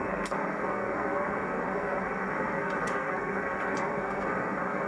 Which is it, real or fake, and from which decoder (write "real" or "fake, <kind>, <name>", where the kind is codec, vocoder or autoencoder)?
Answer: fake, codec, SNAC